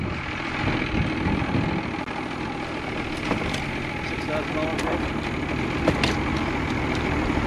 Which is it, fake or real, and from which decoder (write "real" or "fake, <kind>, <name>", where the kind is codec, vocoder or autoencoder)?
real